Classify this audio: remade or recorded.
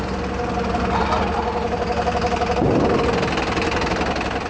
recorded